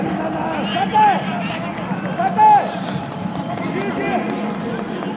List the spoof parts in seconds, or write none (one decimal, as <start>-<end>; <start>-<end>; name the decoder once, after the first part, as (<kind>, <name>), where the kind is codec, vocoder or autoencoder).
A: none